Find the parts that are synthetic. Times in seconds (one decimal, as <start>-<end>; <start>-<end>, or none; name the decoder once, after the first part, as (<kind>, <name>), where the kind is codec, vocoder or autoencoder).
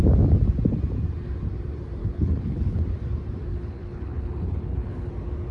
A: 2.0-2.8 (codec, HILCodec); 3.5-5.1